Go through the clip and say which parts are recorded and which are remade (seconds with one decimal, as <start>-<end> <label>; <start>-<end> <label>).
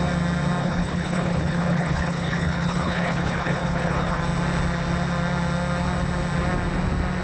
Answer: 0.0-0.6 recorded; 0.6-4.2 remade; 4.2-7.2 recorded